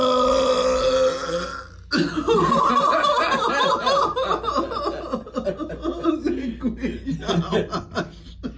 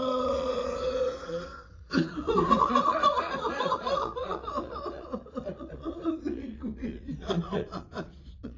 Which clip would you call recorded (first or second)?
first